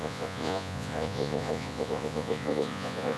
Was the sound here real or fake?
fake